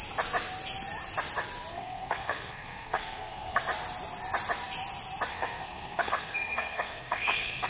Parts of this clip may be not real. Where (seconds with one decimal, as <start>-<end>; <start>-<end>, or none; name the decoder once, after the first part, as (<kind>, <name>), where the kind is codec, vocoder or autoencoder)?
1.7-3.6 (codec, SNAC); 5.3-7.7